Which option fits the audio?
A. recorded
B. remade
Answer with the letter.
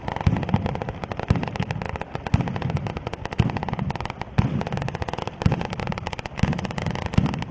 A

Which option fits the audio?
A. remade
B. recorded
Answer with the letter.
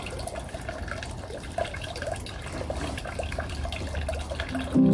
B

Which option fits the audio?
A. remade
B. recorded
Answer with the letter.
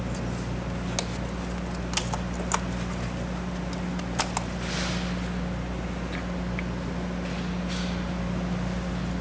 B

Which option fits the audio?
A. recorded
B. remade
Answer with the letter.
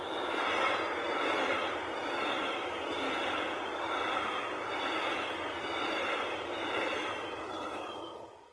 A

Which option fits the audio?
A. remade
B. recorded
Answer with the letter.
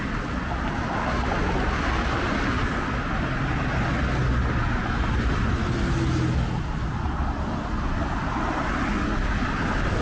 B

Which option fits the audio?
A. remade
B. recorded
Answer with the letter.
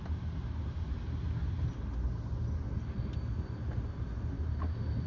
B